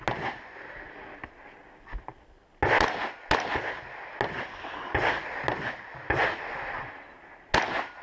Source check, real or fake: real